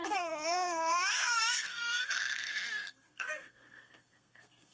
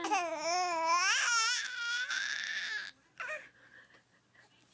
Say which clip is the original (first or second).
second